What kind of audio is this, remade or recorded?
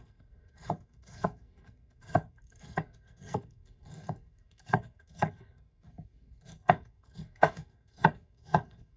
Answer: remade